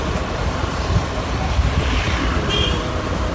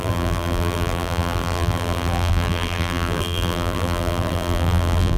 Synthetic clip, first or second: second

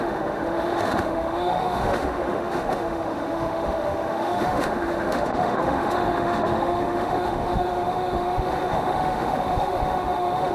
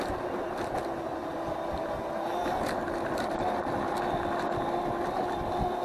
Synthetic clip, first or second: first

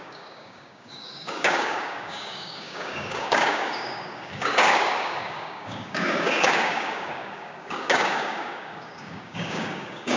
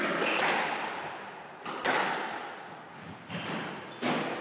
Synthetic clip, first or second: first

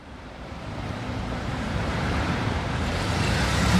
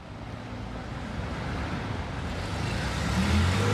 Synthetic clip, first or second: first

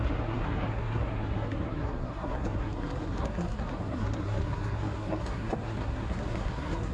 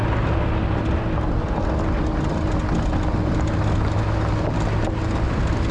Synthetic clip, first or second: first